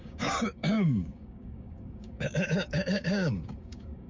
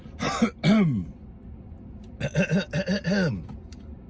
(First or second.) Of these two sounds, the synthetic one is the first